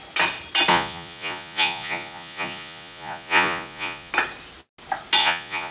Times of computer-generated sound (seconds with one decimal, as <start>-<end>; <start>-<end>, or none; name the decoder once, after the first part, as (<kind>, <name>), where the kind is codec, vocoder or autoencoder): 0.7-4.1 (vocoder, Vocos); 5.2-5.7